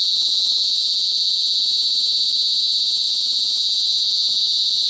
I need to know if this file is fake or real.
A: real